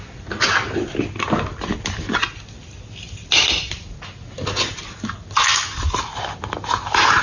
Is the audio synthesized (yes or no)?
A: no